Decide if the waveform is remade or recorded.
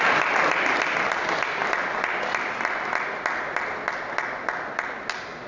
recorded